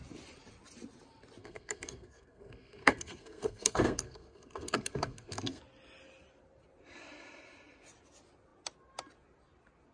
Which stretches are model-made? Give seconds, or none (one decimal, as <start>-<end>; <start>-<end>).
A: 1.4-5.6